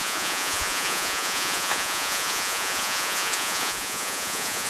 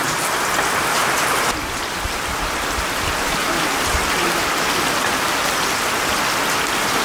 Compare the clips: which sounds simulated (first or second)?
first